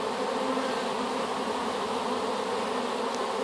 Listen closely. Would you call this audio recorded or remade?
recorded